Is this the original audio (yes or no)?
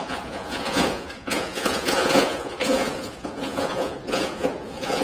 no